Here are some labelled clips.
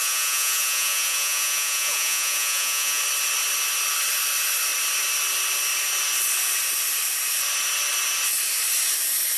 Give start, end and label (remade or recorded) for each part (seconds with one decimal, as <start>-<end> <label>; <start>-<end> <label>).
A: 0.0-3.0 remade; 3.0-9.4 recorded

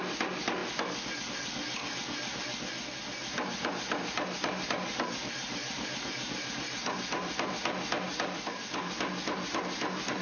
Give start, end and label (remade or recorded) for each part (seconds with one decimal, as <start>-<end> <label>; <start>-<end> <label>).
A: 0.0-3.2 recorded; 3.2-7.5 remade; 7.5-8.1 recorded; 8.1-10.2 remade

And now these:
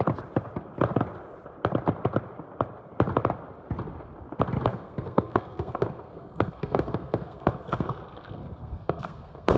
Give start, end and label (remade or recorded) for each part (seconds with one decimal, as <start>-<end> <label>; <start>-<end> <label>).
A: 0.0-4.7 recorded; 4.7-9.6 remade

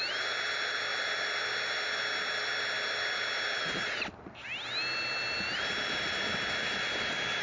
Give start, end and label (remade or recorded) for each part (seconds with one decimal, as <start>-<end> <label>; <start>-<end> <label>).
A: 0.0-7.4 recorded

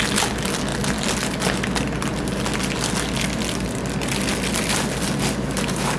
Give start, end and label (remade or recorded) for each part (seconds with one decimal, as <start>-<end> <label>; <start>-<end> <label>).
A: 0.0-6.0 recorded

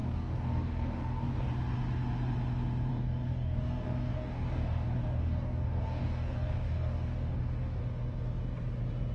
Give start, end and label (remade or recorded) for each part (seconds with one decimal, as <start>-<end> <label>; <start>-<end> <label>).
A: 0.0-1.5 remade; 1.5-2.9 recorded; 2.9-7.8 remade; 7.8-9.1 recorded

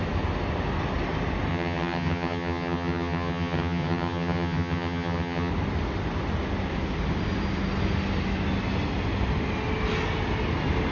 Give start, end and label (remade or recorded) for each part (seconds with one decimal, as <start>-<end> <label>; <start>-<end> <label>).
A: 0.0-1.5 recorded; 1.5-5.5 remade; 5.5-10.9 recorded